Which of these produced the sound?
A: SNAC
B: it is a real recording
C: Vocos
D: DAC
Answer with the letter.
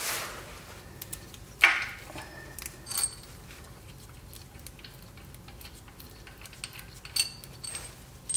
B